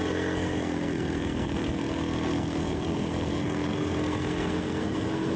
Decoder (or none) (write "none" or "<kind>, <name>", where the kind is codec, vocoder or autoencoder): codec, SNAC